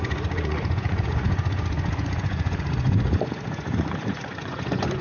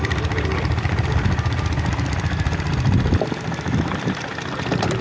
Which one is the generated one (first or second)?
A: first